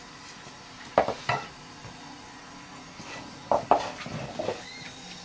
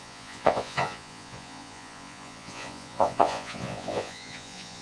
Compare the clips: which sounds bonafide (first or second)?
first